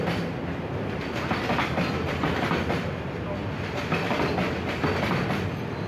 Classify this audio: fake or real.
real